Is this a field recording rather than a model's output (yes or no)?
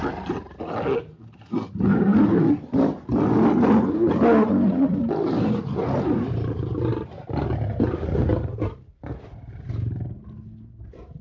yes